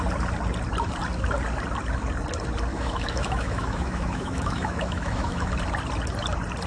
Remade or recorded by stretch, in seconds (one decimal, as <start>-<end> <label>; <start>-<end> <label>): 0.0-2.7 recorded; 2.7-5.5 remade; 5.5-6.7 recorded

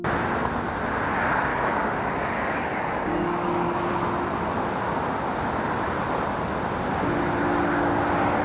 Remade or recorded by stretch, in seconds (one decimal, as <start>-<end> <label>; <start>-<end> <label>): 0.0-1.5 recorded; 1.5-3.9 remade; 3.9-8.4 recorded

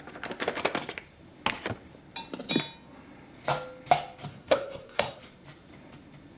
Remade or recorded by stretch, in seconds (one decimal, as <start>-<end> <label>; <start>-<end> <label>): 0.0-4.3 recorded; 4.3-5.2 remade; 5.2-6.4 recorded

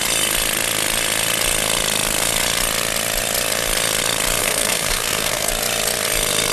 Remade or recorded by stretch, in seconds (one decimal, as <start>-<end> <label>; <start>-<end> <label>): 0.0-4.4 recorded; 4.4-5.5 remade; 5.5-6.5 recorded